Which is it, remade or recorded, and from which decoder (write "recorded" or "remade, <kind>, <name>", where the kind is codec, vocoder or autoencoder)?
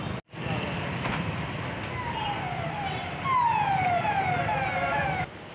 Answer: recorded